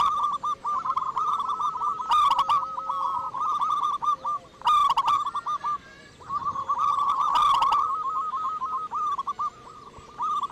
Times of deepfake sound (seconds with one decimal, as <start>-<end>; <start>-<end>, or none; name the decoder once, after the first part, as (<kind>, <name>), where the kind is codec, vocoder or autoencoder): none